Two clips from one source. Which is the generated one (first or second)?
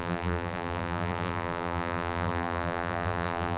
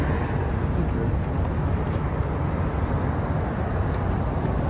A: first